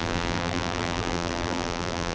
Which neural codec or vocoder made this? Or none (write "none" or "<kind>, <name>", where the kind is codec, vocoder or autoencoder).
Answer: vocoder, BigVGAN v2